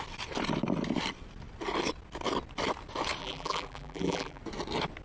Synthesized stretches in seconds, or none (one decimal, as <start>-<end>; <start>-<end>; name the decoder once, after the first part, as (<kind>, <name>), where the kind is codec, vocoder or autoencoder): 3.2-4.4 (vocoder, BigVGAN v2)